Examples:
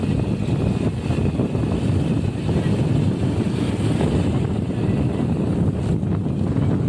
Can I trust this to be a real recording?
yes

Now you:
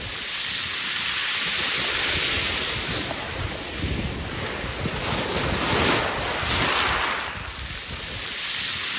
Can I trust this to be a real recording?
yes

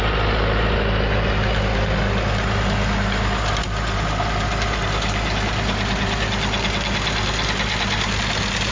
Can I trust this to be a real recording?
yes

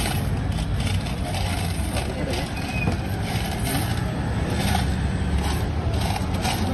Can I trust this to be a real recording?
yes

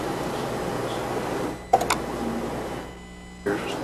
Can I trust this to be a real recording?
yes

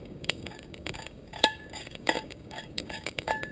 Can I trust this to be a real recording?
no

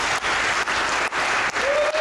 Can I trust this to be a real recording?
yes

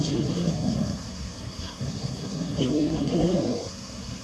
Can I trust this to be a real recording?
no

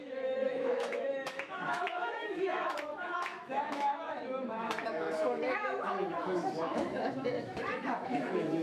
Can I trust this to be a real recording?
no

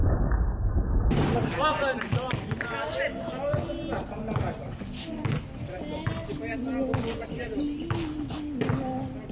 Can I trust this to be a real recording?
yes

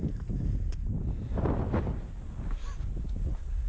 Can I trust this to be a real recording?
yes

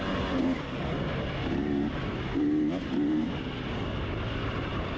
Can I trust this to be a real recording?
yes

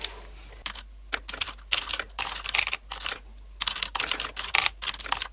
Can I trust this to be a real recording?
yes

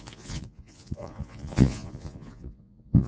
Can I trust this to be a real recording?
no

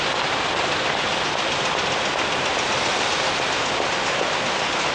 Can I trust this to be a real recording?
yes